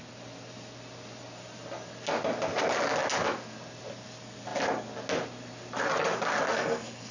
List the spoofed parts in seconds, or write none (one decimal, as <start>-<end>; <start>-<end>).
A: 6.5-7.1